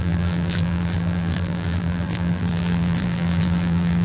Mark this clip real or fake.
fake